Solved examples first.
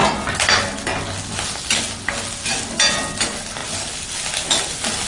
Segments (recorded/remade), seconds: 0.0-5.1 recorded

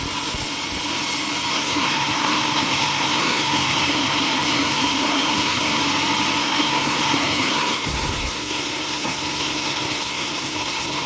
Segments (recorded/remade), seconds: 0.0-1.5 recorded; 1.5-5.8 remade; 5.8-6.4 recorded; 6.4-11.1 remade

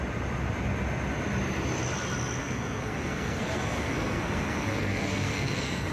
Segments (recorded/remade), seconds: 0.0-2.4 recorded; 2.4-5.9 remade

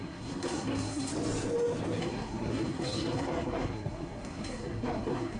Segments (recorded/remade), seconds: 0.0-1.1 remade; 1.1-2.0 recorded; 2.0-5.4 remade